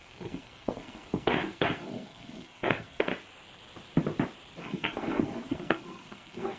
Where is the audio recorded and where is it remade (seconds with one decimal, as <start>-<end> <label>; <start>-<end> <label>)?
0.0-3.1 remade; 3.1-4.6 recorded; 4.6-6.6 remade